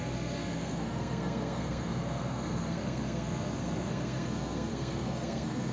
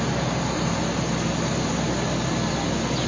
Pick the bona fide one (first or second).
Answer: second